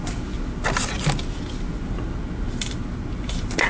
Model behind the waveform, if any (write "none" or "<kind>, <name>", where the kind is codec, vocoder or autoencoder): none